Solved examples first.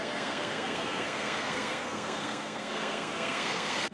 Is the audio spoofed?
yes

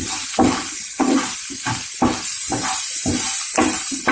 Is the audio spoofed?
no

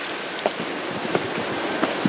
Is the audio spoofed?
no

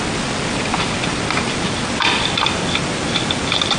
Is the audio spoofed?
no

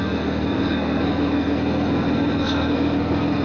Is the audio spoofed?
yes